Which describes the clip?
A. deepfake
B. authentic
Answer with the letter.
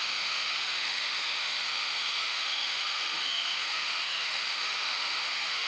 A